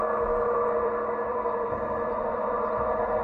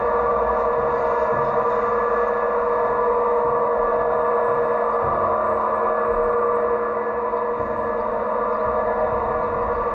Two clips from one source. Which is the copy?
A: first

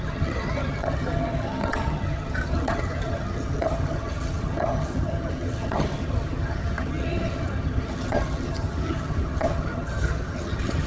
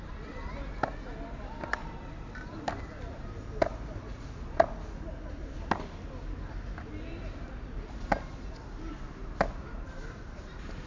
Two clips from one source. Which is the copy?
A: first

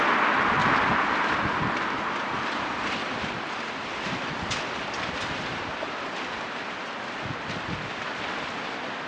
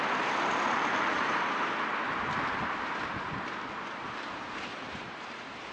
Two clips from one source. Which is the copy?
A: second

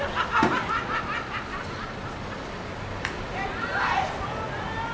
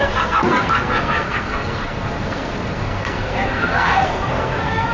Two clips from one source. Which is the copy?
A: second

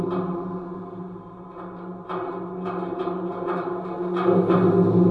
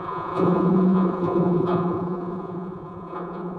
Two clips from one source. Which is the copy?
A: second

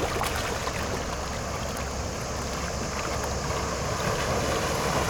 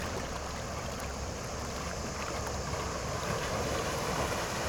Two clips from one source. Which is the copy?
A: second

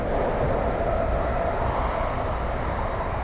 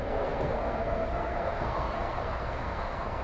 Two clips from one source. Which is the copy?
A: second